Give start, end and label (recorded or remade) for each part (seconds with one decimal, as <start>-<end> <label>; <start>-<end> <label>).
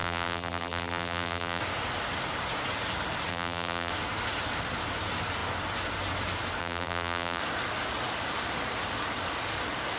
0.0-1.6 remade; 1.6-3.3 recorded; 3.3-3.9 remade; 3.9-6.6 recorded; 6.6-7.4 remade; 7.4-10.0 recorded